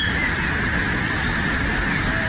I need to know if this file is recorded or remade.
recorded